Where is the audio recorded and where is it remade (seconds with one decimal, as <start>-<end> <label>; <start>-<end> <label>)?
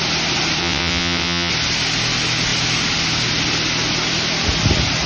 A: 0.0-0.6 recorded; 0.6-1.5 remade; 1.5-5.1 recorded